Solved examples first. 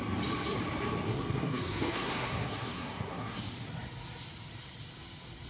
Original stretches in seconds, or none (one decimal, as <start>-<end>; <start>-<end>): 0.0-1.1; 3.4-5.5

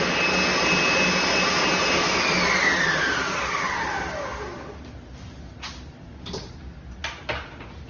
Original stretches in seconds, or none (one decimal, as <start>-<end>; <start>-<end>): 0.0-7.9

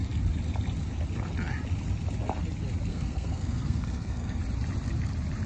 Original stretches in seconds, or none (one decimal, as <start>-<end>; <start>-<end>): 0.0-2.9; 4.4-5.5